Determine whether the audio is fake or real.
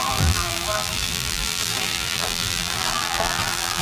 fake